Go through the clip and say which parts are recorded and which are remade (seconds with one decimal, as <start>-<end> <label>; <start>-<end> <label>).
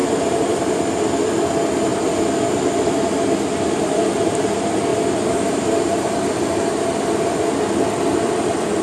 0.0-0.7 remade; 0.7-4.9 recorded; 4.9-6.3 remade; 6.3-8.8 recorded